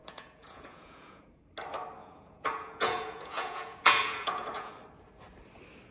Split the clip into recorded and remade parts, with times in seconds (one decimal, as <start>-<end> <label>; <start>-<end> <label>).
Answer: 0.0-1.4 remade; 1.4-2.0 recorded; 2.0-4.7 remade; 4.7-5.9 recorded